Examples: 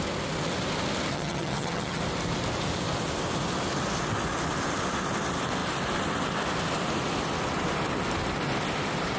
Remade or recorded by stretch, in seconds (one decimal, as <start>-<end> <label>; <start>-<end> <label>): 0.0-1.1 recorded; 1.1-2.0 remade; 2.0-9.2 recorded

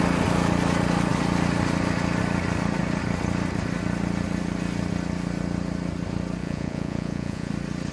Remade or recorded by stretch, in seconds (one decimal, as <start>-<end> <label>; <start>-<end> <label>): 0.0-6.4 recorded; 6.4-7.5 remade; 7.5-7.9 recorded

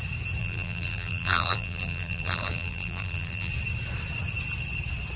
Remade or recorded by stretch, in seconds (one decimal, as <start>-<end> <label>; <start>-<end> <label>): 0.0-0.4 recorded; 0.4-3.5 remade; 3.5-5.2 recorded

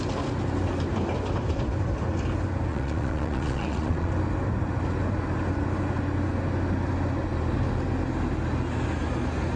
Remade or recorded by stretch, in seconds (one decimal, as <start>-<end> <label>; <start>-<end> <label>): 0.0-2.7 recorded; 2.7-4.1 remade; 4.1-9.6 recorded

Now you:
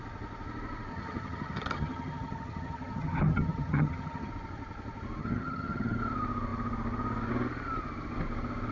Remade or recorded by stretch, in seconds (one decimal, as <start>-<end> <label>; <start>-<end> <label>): 0.0-0.9 recorded; 0.9-4.3 remade; 4.3-5.2 recorded; 5.2-6.0 remade; 6.0-8.7 recorded